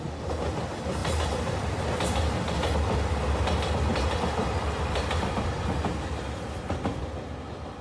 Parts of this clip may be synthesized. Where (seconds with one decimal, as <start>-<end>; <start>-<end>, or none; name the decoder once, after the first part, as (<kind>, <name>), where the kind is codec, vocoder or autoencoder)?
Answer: none